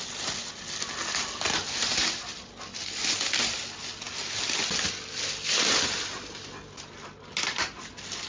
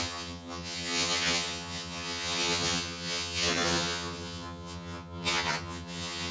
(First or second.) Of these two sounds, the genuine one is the first